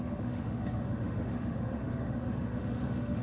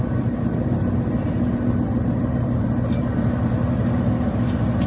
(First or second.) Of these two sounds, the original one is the second